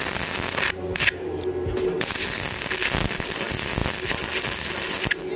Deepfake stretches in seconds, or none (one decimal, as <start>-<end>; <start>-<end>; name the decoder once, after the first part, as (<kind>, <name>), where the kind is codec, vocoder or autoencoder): none